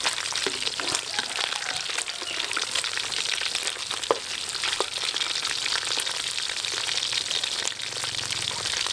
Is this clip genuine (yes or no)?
yes